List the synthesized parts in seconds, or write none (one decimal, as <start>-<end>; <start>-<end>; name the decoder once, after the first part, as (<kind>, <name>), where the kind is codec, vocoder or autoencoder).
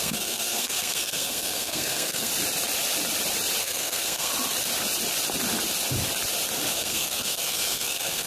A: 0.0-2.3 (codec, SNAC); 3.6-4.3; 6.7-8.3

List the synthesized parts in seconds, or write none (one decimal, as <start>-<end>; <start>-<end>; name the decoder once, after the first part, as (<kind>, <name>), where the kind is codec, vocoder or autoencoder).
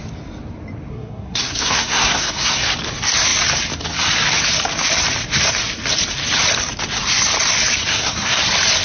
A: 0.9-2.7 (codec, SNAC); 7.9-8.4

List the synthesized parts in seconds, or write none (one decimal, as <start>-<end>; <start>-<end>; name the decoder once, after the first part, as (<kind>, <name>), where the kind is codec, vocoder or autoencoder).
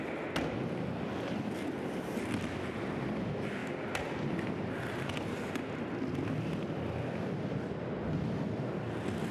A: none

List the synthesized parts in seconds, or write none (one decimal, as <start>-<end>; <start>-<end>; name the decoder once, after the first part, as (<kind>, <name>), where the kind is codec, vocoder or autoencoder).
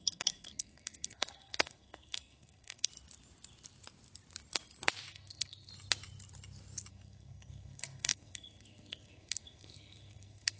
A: 0.0-2.9 (codec, SNAC); 5.1-5.7; 6.9-10.6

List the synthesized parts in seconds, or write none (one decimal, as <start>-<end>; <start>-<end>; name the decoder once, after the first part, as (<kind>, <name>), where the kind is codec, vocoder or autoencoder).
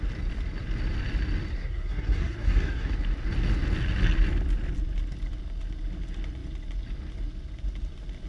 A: 1.5-2.9 (codec, SNAC)